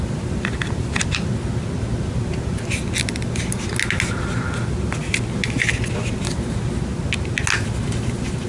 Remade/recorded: recorded